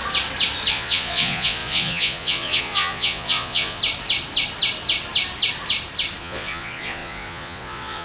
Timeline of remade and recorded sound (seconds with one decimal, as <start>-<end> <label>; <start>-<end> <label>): 0.0-0.7 recorded; 0.7-3.8 remade; 3.8-6.2 recorded; 6.2-8.0 remade